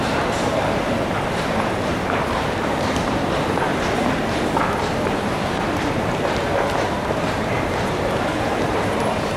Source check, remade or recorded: remade